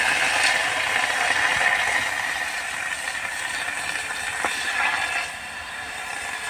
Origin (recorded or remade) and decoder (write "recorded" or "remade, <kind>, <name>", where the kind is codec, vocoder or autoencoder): recorded